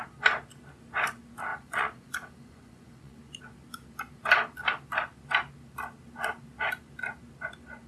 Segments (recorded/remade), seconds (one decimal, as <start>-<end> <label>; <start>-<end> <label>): 0.0-1.5 recorded; 1.5-3.4 remade; 3.4-7.9 recorded